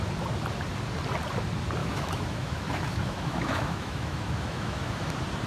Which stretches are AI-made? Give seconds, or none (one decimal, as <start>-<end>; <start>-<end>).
1.8-5.1